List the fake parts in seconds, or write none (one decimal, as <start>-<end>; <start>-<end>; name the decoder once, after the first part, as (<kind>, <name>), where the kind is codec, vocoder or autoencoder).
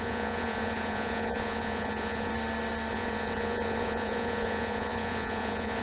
0.0-2.3 (vocoder, Vocos); 2.9-5.8